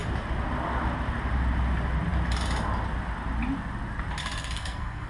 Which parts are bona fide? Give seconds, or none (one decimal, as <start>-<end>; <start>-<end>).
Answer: 0.0-4.2